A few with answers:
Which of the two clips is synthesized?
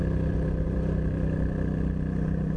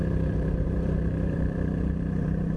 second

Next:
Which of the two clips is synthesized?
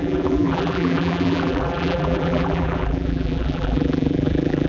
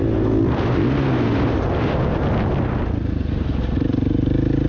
first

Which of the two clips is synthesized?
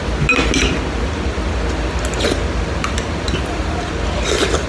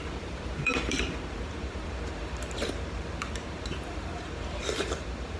second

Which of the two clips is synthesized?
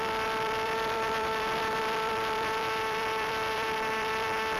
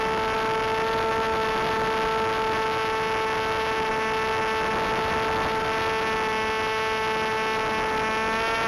first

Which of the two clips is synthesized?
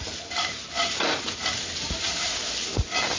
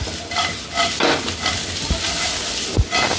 first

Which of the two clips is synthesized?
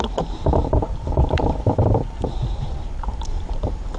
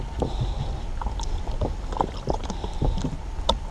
first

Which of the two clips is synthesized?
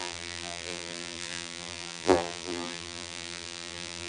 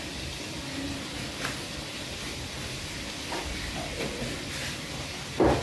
first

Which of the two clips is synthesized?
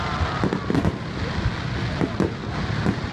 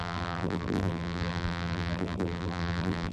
second